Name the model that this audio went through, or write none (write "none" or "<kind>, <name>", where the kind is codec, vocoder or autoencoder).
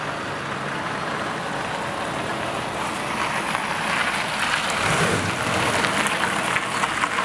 none